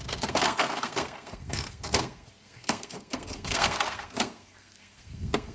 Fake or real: fake